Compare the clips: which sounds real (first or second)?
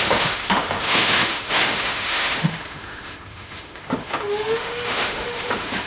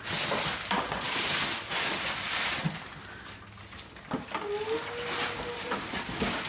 second